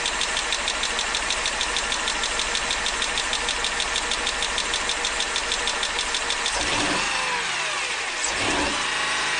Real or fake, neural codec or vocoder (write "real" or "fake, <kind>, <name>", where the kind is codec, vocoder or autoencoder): real